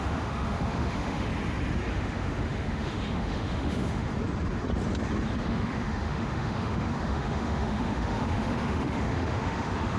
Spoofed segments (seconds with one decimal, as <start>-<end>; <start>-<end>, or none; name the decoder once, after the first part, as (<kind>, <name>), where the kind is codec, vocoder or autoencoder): 0.0-1.3 (autoencoder, DAC-VAE); 1.9-4.1; 5.4-10.0